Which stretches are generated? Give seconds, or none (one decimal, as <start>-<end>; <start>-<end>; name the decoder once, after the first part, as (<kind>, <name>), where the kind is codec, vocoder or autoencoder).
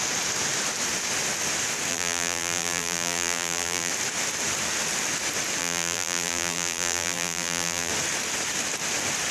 1.9-3.9 (vocoder, BigVGAN v2); 5.6-7.9